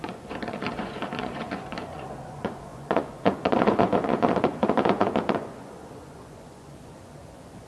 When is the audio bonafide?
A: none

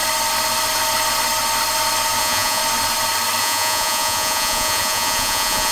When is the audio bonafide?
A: 0.0-2.2; 2.6-3.4

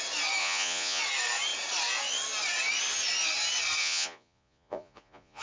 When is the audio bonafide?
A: 0.0-0.4; 1.0-3.8